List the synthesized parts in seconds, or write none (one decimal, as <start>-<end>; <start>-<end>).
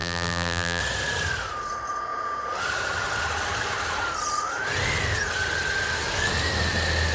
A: 0.0-0.8